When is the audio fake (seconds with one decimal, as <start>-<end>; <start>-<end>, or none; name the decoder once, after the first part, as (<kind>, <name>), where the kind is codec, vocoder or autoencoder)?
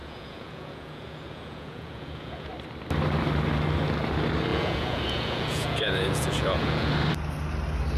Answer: 0.0-2.5 (vocoder, Vocos); 4.5-6.9